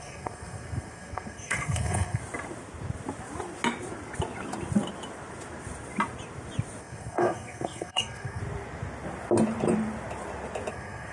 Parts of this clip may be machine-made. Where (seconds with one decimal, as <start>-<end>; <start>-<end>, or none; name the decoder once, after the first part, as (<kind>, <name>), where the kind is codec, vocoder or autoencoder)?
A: 0.0-2.2 (codec, SNAC); 6.8-8.4; 10.7-11.1